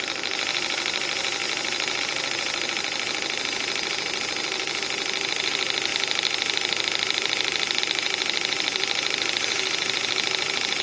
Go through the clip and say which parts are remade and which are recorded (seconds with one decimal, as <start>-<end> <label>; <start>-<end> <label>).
0.0-10.8 recorded